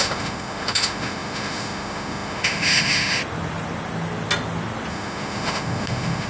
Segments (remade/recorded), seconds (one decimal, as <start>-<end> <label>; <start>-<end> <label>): 0.0-3.2 remade; 3.2-4.9 recorded; 4.9-6.3 remade